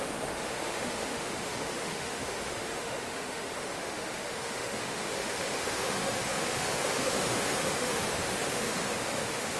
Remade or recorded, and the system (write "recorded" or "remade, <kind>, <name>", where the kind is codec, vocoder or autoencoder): remade, autoencoder, DAC-VAE